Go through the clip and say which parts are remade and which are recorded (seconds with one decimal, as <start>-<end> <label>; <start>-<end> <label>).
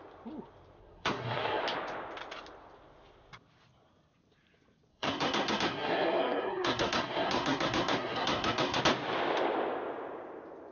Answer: 0.0-0.8 recorded; 0.8-1.6 remade; 1.6-4.9 recorded; 4.9-8.8 remade; 8.8-10.7 recorded